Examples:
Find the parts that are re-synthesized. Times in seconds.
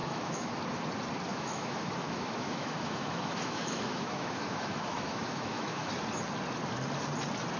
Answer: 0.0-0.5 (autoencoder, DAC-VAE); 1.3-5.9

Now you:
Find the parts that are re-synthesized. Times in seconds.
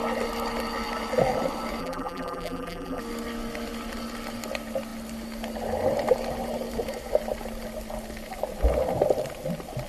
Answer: 1.8-3.0 (vocoder, BigVGAN v2)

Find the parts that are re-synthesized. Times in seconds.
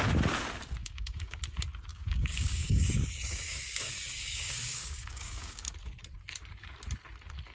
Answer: 0.8-1.4 (codec, DAC); 1.9-5.7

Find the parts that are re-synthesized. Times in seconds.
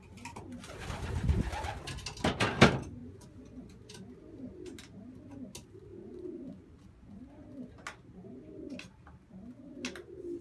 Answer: 3.0-3.8 (vocoder, Vocos); 5.9-7.2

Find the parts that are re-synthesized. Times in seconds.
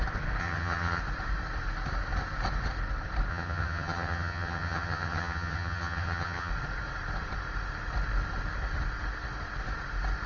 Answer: 0.4-1.0 (vocoder, HiFi-GAN); 3.3-6.5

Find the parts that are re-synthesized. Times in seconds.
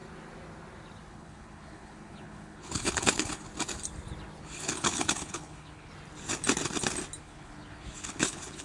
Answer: 1.1-3.5 (codec, HILCodec); 4.4-5.9; 7.2-8.6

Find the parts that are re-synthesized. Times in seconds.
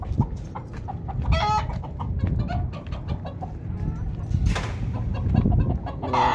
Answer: none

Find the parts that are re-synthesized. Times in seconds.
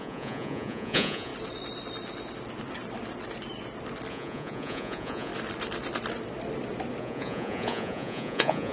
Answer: 0.0-1.3 (vocoder, Vocos); 4.1-5.3; 7.0-8.7